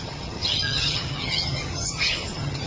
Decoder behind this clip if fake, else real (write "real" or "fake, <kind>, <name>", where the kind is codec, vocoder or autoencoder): fake, vocoder, HiFi-GAN